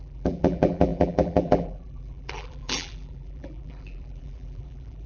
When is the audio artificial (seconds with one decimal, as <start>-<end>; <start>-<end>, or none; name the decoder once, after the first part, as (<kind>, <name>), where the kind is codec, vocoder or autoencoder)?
0.0-5.1 (vocoder, BigVGAN v2)